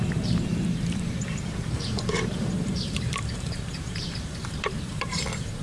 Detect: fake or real fake